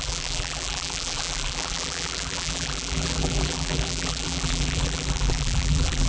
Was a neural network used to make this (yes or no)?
yes